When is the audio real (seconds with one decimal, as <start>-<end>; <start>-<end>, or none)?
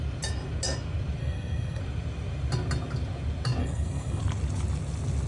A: 0.0-1.2; 1.8-3.6; 4.2-5.3